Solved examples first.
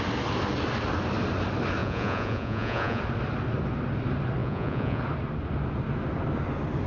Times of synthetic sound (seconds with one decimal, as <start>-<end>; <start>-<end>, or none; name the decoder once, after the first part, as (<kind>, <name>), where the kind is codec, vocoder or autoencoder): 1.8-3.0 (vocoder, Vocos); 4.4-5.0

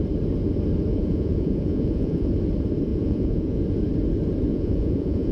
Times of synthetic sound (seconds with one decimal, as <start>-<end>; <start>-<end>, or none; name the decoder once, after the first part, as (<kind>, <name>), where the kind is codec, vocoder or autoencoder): 0.9-2.3 (vocoder, Vocos); 2.9-3.6; 4.5-5.3

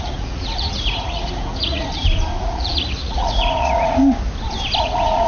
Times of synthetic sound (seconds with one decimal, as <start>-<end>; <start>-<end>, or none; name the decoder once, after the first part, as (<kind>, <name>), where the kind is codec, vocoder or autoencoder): 0.0-1.9 (vocoder, Vocos); 2.4-4.0; 4.8-5.3

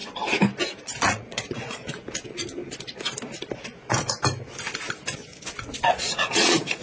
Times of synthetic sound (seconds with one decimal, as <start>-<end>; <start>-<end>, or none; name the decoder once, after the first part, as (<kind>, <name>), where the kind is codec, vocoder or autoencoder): 0.8-1.9 (vocoder, Vocos); 5.9-6.8

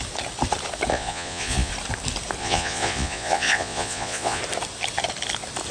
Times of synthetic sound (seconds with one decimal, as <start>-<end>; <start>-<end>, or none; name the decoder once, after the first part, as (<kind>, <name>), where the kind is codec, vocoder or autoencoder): 0.9-1.7 (vocoder, Vocos); 2.4-4.4

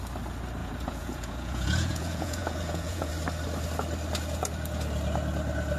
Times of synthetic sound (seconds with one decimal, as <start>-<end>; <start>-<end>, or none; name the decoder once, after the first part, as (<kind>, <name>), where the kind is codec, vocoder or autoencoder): 0.6-3.1 (vocoder, Vocos)

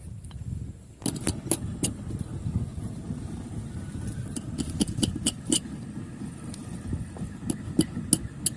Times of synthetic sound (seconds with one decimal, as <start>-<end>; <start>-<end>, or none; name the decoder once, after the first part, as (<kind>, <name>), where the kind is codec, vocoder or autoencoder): none